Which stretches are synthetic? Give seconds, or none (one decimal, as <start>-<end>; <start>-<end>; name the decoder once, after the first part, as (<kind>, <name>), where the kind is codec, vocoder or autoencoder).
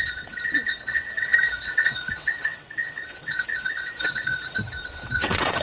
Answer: 0.0-5.6 (vocoder, WaveNeXt)